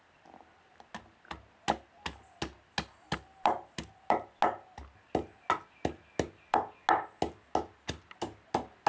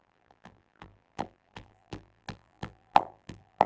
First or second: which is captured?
first